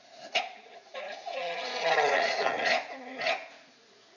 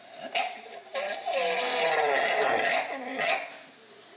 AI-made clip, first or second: first